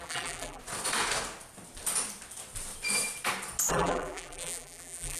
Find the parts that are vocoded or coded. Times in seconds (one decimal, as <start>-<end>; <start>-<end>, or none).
0.0-0.6; 3.7-5.2